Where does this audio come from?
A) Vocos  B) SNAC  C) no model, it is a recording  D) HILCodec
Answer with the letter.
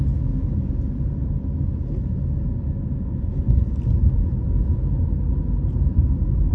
C